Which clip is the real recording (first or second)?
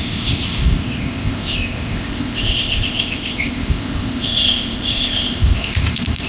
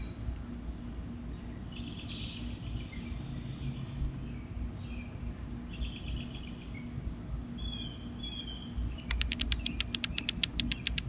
second